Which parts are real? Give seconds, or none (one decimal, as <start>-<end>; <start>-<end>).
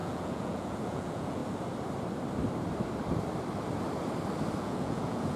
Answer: 1.4-4.6